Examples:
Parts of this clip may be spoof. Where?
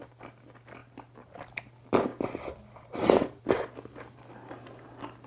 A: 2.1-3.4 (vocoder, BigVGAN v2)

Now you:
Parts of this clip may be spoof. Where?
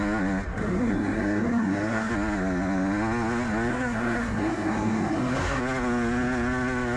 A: 0.5-2.1 (codec, SNAC); 3.7-5.6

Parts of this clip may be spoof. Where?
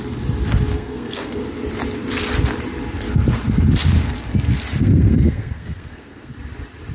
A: 0.7-1.4 (codec, SNAC); 4.8-6.3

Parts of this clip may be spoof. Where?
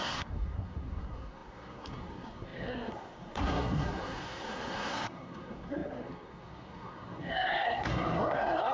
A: 0.0-8.7 (codec, SNAC)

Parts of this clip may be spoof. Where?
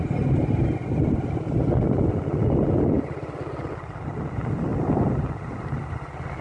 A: none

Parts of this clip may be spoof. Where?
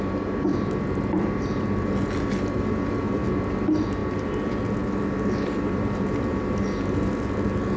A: 0.5-1.8 (vocoder, BigVGAN v2); 4.0-6.4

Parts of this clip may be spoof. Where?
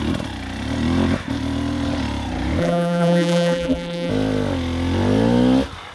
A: 2.6-4.1 (vocoder, BigVGAN v2)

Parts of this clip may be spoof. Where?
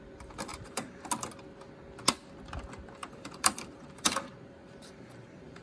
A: 0.5-1.0 (vocoder, BigVGAN v2); 3.0-5.6